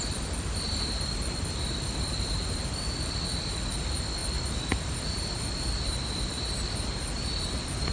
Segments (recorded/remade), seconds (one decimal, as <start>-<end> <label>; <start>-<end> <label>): 0.0-7.9 recorded